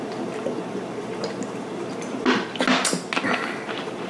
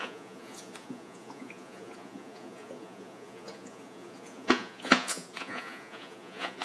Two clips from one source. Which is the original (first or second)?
first